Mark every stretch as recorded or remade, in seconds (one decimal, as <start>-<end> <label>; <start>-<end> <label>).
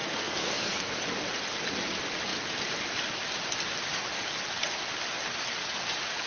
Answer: 0.0-1.0 remade; 1.0-6.3 recorded